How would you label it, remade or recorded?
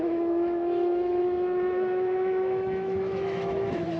remade